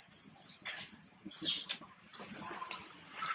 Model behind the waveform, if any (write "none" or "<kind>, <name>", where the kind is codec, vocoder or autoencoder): none